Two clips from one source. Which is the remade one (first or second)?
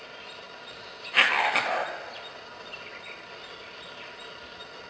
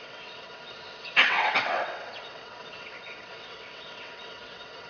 second